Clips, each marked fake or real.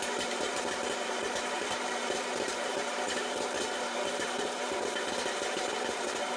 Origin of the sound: fake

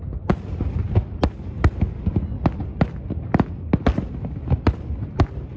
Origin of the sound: real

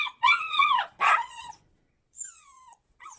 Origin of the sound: fake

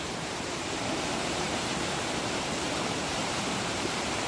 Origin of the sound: fake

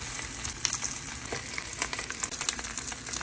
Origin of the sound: real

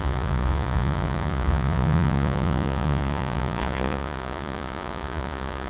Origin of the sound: fake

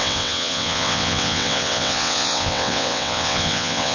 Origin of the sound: fake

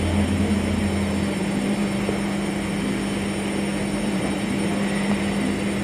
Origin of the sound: real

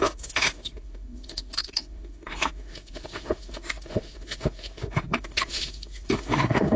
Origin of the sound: fake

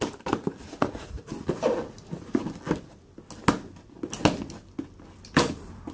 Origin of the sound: real